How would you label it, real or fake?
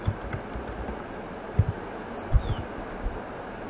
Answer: real